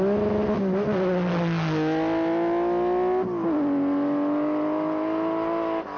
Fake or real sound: real